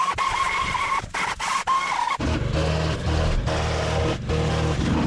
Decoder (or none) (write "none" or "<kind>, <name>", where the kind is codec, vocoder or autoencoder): none